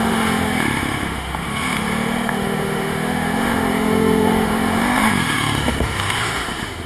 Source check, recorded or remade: remade